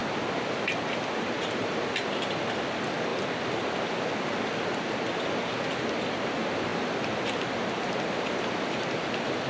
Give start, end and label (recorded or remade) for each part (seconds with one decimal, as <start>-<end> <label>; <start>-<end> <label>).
0.0-3.1 recorded; 3.1-3.9 remade; 3.9-6.7 recorded; 6.7-8.9 remade; 8.9-9.5 recorded